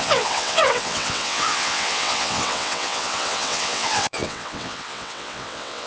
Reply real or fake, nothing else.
fake